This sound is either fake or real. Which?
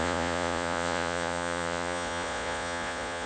fake